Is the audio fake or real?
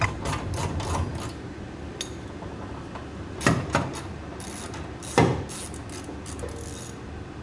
real